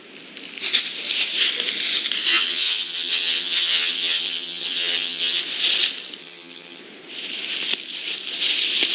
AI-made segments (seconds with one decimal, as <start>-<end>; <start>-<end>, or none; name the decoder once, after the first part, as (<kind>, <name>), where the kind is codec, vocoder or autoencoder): 2.3-5.4 (vocoder, HiFi-GAN); 6.2-6.8